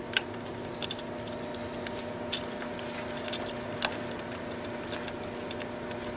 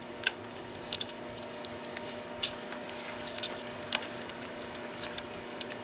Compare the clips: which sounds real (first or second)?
first